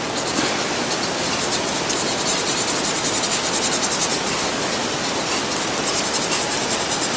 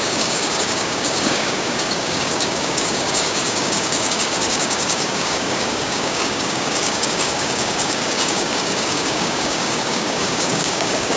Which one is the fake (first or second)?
second